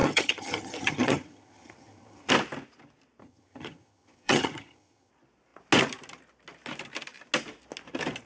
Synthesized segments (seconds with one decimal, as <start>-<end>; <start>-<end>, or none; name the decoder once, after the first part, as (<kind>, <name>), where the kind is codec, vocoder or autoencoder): 0.0-2.3 (vocoder, HiFi-GAN); 3.2-5.1